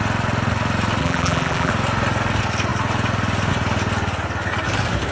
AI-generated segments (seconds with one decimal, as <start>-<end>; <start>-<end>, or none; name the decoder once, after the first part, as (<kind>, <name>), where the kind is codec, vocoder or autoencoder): 1.0-1.7 (vocoder, BigVGAN v2)